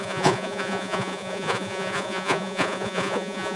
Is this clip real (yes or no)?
no